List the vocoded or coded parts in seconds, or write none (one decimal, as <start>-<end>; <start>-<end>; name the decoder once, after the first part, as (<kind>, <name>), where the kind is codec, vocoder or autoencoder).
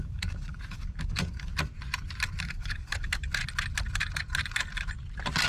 0.0-1.5 (codec, DAC); 2.4-3.4